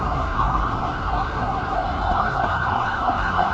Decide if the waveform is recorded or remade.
remade